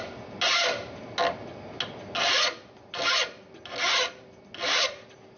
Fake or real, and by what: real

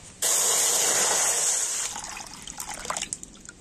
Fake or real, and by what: real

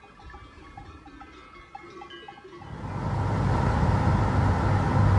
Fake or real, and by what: real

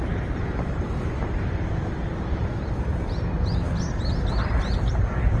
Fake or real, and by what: fake, vocoder, BigVGAN v2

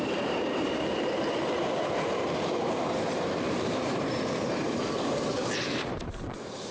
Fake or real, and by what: fake, vocoder, BigVGAN v2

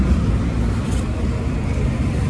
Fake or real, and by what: real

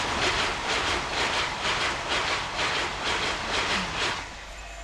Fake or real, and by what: real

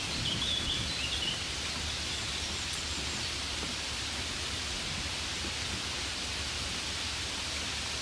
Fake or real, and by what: fake, vocoder, BigVGAN v2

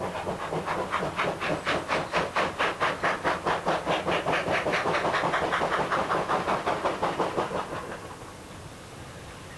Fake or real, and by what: real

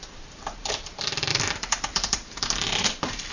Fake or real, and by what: fake, vocoder, BigVGAN v2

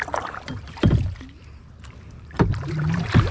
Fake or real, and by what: fake, vocoder, BigVGAN v2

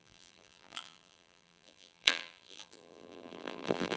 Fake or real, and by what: fake, vocoder, BigVGAN v2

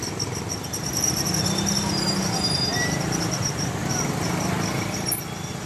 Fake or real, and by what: real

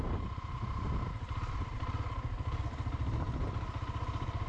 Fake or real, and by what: fake, vocoder, BigVGAN v2